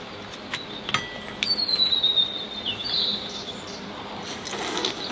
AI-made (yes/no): no